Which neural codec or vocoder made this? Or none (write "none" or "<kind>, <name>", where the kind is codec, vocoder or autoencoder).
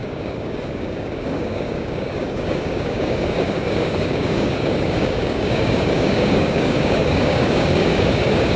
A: codec, DAC